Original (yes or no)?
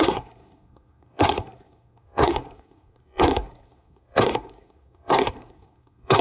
no